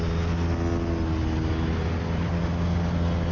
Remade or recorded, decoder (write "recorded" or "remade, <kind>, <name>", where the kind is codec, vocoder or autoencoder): recorded